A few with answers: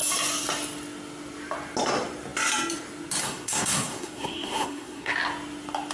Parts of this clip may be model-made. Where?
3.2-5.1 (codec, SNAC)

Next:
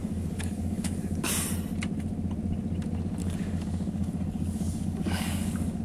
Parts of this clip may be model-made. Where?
0.0-1.3 (codec, DAC); 3.2-5.8